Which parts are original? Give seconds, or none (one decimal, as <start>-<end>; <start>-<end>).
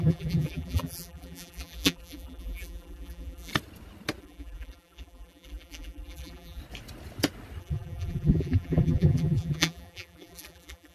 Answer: 3.5-4.2; 6.6-7.6